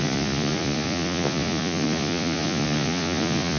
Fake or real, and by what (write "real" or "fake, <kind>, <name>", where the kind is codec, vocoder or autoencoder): fake, vocoder, Vocos